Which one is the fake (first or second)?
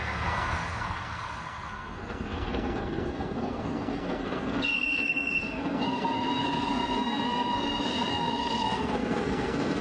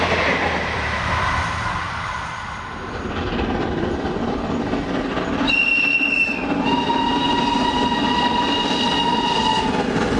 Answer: first